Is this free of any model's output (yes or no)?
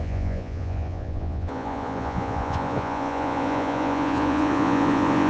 no